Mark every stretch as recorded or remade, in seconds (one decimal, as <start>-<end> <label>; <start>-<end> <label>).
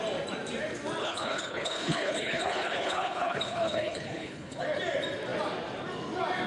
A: 0.0-1.0 recorded; 1.0-4.6 remade; 4.6-6.5 recorded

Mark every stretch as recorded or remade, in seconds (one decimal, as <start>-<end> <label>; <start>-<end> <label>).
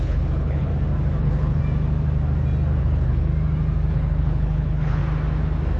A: 0.0-0.7 remade; 0.7-1.2 recorded; 1.2-1.6 remade; 1.6-2.8 recorded; 2.8-3.3 remade; 3.3-3.9 recorded; 3.9-5.0 remade; 5.0-5.8 recorded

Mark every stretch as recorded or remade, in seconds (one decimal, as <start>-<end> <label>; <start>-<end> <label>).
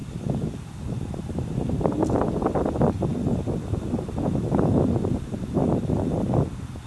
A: 0.0-6.9 recorded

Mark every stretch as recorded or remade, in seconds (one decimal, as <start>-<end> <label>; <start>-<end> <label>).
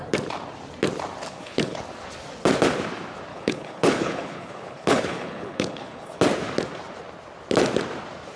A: 0.0-1.2 recorded; 1.2-1.8 remade; 1.8-3.3 recorded; 3.3-6.2 remade; 6.2-8.4 recorded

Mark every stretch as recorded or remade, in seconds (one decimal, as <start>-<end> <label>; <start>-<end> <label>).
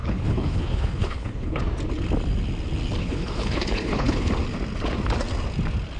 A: 0.0-1.6 remade; 1.6-3.0 recorded; 3.0-4.3 remade; 4.3-6.0 recorded